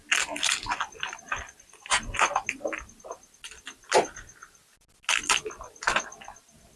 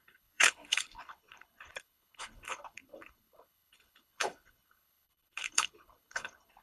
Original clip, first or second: first